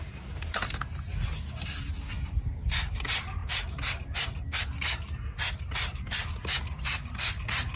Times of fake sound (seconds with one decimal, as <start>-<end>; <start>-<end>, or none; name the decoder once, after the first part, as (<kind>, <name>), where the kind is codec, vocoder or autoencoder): 3.4-4.0 (vocoder, BigVGAN v2); 5.9-6.6

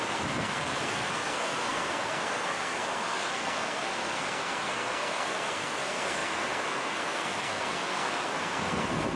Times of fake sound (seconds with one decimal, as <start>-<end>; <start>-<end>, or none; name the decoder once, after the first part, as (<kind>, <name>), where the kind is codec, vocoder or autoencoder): 0.0-9.2 (codec, SNAC)

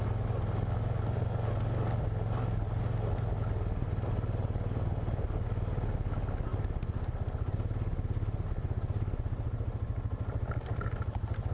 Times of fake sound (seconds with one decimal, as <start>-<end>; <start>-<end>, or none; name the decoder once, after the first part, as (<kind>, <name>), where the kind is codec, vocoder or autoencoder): none

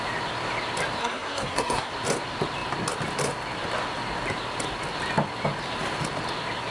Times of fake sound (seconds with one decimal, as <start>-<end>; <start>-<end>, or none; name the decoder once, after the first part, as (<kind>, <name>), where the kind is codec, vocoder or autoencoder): 1.0-1.9 (codec, SNAC)

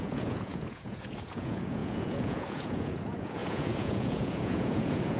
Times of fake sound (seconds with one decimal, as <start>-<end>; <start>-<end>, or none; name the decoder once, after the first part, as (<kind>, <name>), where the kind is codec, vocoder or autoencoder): 0.0-5.2 (vocoder, Vocos)